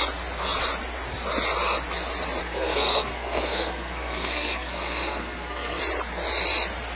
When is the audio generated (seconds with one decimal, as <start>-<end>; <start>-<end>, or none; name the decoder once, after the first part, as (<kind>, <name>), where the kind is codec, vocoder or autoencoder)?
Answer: 2.4-5.8 (codec, SNAC)